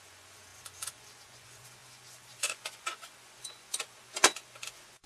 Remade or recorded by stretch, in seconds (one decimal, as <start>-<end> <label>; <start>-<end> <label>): 0.0-5.1 remade